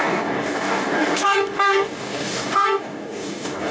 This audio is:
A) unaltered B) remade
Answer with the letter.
B